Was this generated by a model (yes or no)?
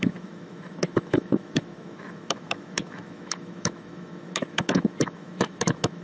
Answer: yes